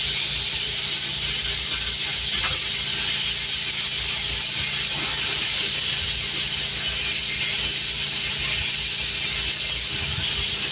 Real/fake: real